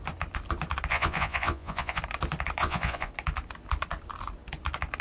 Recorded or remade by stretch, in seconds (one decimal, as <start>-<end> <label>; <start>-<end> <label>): 0.0-0.9 recorded; 0.9-2.0 remade; 2.0-2.6 recorded; 2.6-3.1 remade; 3.1-5.0 recorded